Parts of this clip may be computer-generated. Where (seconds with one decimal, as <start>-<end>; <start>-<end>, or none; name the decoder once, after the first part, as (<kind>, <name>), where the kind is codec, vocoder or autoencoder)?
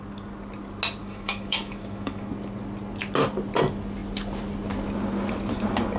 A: 1.0-2.3 (autoencoder, DAC-VAE)